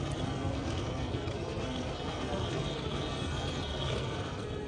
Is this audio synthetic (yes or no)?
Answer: yes